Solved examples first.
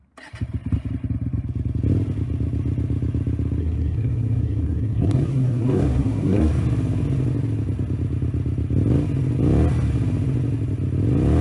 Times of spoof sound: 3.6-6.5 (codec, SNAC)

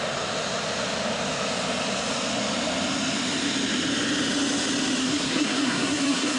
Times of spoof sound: 5.0-6.4 (codec, SNAC)